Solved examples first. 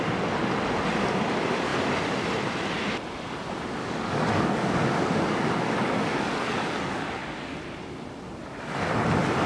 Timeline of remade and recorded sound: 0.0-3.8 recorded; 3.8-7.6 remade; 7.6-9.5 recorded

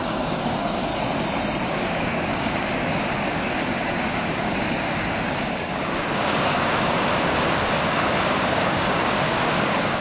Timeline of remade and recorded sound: 0.0-0.9 remade; 0.9-1.7 recorded; 1.7-10.0 remade

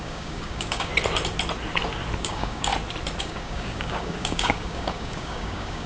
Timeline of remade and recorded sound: 0.0-0.9 remade; 0.9-2.2 recorded; 2.2-2.7 remade; 2.7-3.2 recorded; 3.2-5.9 remade

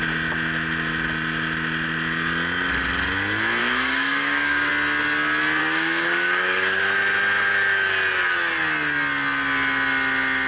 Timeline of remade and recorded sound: 0.0-3.6 recorded; 3.6-4.7 remade; 4.7-5.6 recorded; 5.6-6.8 remade; 6.8-10.5 recorded

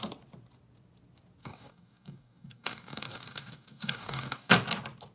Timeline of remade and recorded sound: 0.0-1.4 recorded; 1.4-4.5 remade; 4.5-5.1 recorded

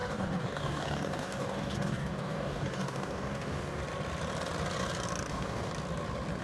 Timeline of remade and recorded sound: 0.0-3.8 remade; 3.8-5.3 recorded; 5.3-5.7 remade; 5.7-6.4 recorded

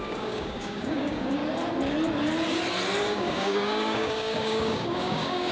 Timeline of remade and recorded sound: 0.0-1.4 remade; 1.4-3.0 recorded; 3.0-5.5 remade